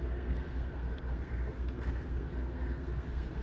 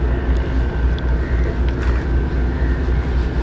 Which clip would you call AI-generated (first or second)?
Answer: first